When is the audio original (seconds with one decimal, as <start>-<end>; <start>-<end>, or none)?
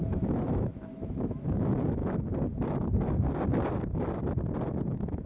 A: 2.0-5.3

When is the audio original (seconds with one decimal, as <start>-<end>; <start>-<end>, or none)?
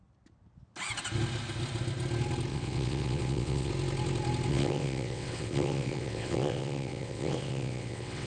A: 0.0-2.5; 3.7-4.5